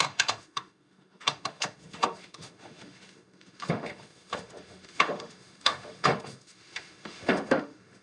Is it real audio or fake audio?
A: fake